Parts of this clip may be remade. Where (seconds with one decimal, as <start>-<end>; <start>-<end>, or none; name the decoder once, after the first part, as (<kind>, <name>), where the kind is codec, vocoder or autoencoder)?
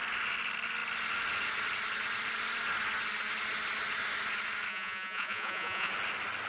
4.7-5.9 (vocoder, Vocos)